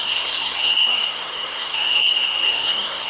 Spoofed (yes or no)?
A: yes